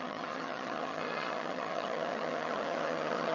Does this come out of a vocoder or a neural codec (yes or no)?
yes